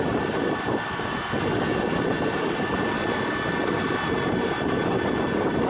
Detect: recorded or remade recorded